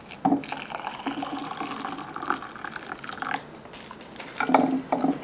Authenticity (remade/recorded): recorded